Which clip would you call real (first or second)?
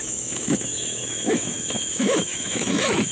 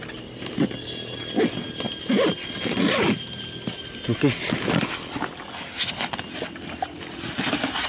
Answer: second